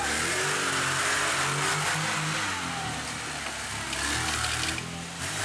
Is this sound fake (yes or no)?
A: no